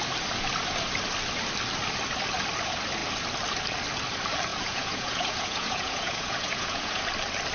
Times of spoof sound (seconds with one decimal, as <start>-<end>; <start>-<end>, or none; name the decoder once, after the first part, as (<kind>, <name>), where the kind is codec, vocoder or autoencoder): 4.5-7.0 (vocoder, Vocos)